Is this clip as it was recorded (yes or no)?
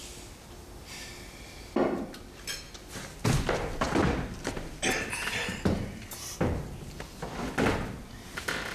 yes